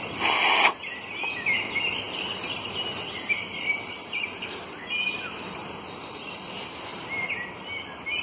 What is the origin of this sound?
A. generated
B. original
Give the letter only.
B